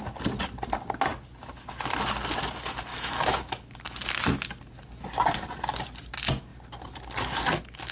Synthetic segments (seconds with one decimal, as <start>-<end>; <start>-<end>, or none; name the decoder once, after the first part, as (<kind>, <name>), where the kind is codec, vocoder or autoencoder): 2.9-3.5 (autoencoder, DAC-VAE)